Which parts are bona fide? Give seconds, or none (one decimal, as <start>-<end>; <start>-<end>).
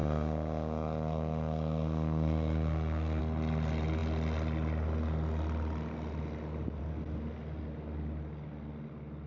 3.2-9.3